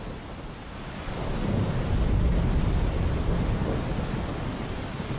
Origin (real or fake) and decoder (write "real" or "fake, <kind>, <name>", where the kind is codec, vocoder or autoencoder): real